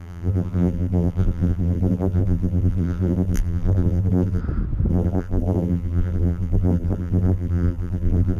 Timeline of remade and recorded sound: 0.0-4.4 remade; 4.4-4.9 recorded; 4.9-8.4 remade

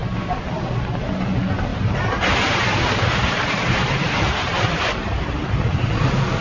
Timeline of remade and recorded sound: 0.0-1.7 recorded; 1.7-5.5 remade; 5.5-6.4 recorded

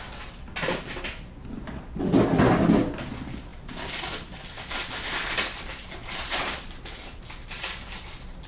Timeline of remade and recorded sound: 0.0-6.0 recorded; 6.0-7.2 remade; 7.2-8.5 recorded

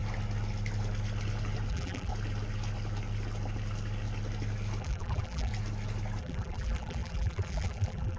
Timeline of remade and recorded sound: 0.0-1.7 recorded; 1.7-2.1 remade; 2.1-4.8 recorded; 4.8-5.5 remade; 5.5-6.2 recorded; 6.2-8.2 remade

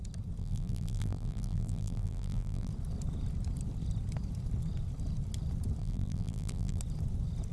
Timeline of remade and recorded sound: 0.0-0.4 recorded; 0.4-2.7 remade; 2.7-5.8 recorded; 5.8-6.8 remade; 6.8-7.5 recorded

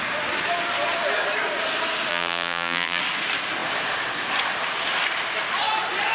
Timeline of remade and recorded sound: 0.0-2.1 recorded; 2.1-3.0 remade; 3.0-6.1 recorded

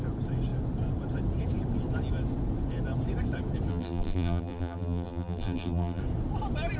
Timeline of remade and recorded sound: 0.0-3.7 recorded; 3.7-6.0 remade; 6.0-6.8 recorded